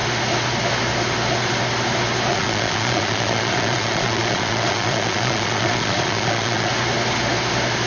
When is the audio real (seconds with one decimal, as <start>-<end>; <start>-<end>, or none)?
0.0-2.3; 6.7-7.9